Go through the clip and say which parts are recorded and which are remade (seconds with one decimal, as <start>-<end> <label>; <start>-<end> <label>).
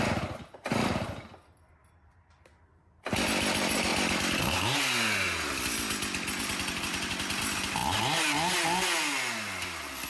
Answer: 0.0-3.9 remade; 3.9-6.4 recorded; 6.4-7.8 remade; 7.8-10.1 recorded